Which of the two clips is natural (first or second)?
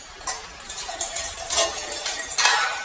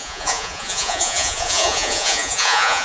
first